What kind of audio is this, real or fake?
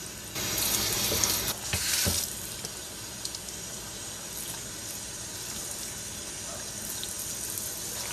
real